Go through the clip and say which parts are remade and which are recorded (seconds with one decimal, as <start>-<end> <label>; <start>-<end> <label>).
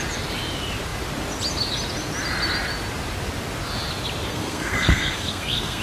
0.0-4.3 recorded; 4.3-5.8 remade